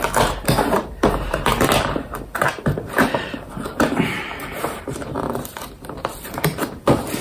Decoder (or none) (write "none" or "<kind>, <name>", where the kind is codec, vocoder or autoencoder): vocoder, BigVGAN v2